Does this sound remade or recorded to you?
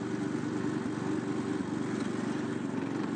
recorded